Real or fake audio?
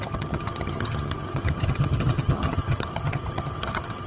fake